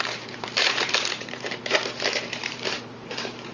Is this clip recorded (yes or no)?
no